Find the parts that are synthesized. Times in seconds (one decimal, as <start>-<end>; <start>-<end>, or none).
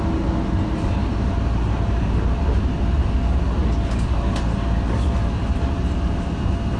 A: none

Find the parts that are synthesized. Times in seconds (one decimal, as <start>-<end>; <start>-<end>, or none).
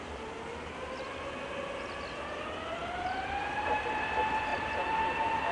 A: none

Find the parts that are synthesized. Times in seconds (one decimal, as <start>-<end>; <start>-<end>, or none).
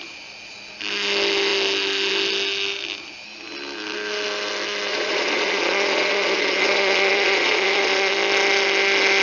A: 4.9-8.1